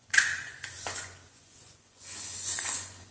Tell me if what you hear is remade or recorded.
remade